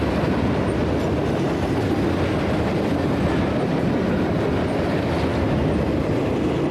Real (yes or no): yes